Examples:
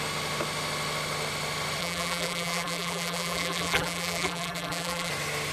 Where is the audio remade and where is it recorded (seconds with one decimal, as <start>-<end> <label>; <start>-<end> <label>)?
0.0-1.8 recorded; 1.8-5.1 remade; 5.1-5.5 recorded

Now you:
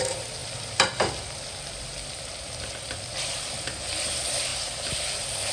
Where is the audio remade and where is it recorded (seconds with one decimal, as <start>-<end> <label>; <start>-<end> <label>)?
0.0-0.4 recorded; 0.4-3.1 remade; 3.1-5.5 recorded

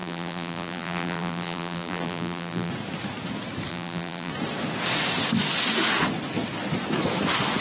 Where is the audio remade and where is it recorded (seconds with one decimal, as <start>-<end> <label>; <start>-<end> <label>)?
0.0-2.7 remade; 2.7-3.7 recorded; 3.7-4.3 remade; 4.3-7.6 recorded

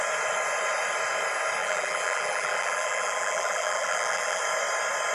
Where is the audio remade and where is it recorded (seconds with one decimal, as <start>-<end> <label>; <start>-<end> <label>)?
0.0-1.6 recorded; 1.6-4.4 remade; 4.4-5.1 recorded

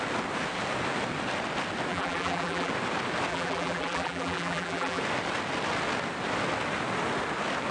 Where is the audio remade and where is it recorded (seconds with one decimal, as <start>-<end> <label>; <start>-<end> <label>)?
0.0-1.9 recorded; 1.9-2.7 remade; 2.7-3.3 recorded; 3.3-5.0 remade; 5.0-7.7 recorded